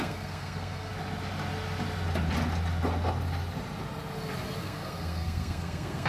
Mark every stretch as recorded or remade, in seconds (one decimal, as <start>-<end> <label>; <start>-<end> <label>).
0.0-0.9 remade; 0.9-4.6 recorded; 4.6-6.1 remade